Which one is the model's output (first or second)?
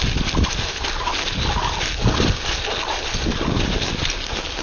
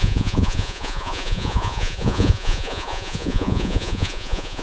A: second